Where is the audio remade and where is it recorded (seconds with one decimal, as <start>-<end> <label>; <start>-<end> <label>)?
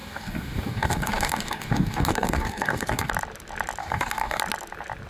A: 0.0-3.1 remade; 3.1-3.8 recorded; 3.8-4.4 remade; 4.4-5.1 recorded